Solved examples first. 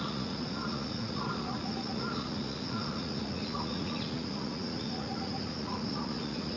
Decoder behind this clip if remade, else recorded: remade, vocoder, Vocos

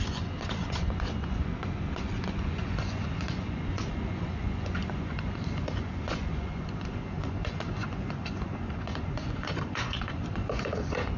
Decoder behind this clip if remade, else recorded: remade, vocoder, Vocos